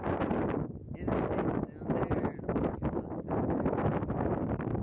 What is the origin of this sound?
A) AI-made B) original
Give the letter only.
B